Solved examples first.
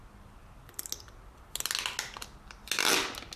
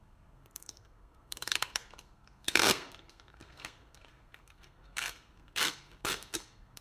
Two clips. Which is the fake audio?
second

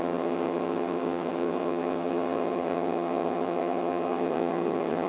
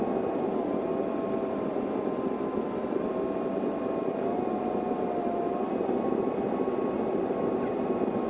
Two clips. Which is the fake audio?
first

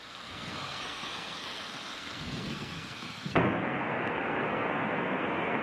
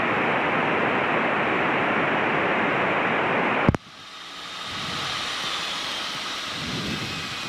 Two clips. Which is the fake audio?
first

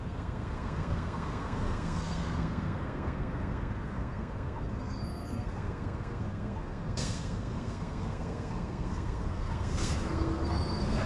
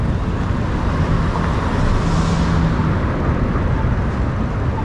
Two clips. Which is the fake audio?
first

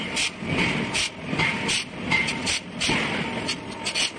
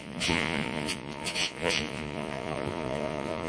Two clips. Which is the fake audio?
second